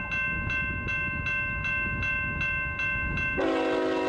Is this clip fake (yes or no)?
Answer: no